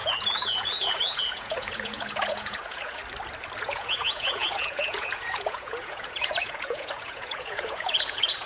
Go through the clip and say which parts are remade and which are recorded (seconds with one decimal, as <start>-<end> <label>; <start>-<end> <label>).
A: 0.0-3.0 remade; 3.0-3.6 recorded; 3.6-8.5 remade